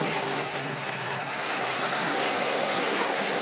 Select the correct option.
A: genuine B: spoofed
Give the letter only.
B